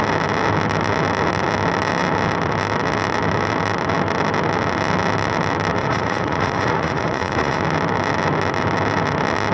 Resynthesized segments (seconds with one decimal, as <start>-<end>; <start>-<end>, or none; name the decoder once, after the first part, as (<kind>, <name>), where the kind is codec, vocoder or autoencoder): 5.8-7.6 (vocoder, Vocos)

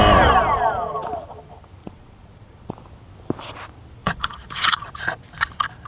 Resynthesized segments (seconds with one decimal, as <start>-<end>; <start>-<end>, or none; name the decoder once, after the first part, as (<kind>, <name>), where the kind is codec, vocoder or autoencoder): 1.8-2.7 (vocoder, Vocos); 4.0-4.9

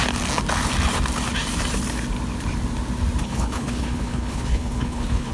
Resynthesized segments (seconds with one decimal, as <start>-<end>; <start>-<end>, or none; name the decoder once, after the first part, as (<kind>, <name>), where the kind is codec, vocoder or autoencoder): 3.2-5.3 (codec, HILCodec)

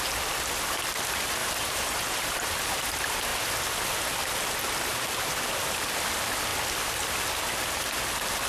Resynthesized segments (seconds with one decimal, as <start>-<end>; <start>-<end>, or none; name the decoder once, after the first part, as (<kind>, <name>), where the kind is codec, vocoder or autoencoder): 1.4-2.8 (vocoder, BigVGAN v2)

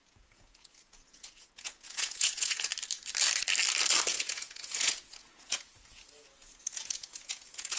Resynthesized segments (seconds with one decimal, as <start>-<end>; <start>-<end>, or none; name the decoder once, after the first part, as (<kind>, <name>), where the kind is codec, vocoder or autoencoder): 0.0-2.7 (vocoder, Vocos); 4.1-7.8